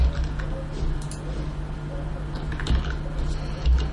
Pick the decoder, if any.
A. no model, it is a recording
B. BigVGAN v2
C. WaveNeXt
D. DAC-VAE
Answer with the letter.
A